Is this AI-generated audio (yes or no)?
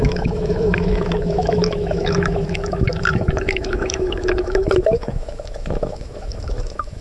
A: yes